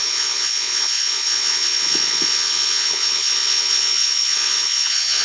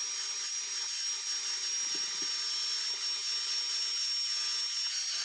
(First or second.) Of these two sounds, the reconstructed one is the first